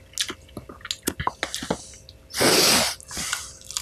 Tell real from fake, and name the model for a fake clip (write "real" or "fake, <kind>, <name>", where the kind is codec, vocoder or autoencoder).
real